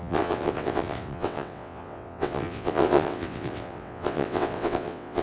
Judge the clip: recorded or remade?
remade